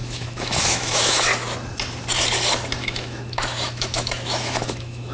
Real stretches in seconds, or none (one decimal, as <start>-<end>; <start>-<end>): 1.3-2.8